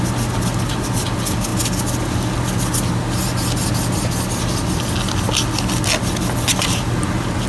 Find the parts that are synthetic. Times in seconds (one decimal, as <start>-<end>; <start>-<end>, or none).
none